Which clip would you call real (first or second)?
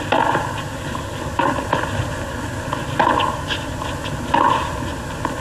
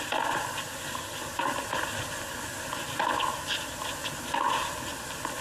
first